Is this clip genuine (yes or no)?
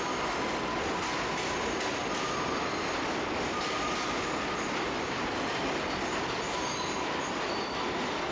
yes